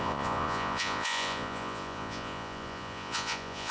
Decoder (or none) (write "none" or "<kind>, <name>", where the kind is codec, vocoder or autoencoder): vocoder, Vocos